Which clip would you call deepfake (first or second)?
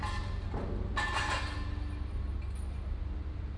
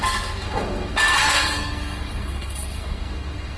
second